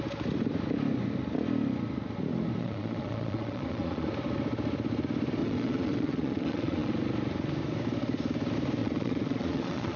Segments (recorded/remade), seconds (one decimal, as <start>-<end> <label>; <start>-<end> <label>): 0.0-2.6 recorded; 2.6-4.1 remade; 4.1-5.4 recorded; 5.4-6.9 remade; 6.9-8.8 recorded; 8.8-10.0 remade